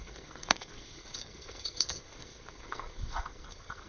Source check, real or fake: fake